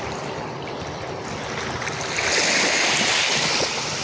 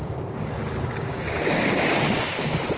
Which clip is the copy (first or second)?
second